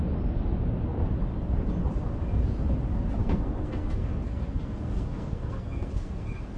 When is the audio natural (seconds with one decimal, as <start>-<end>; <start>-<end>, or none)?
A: 0.0-3.2